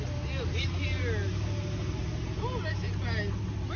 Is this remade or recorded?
recorded